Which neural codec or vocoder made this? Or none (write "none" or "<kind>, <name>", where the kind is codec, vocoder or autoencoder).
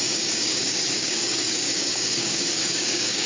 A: codec, DAC